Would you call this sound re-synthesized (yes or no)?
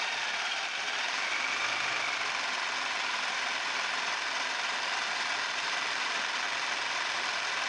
no